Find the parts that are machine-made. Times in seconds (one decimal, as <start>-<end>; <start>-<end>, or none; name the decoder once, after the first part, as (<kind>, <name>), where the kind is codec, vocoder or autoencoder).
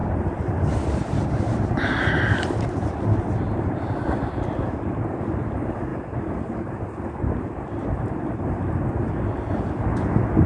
none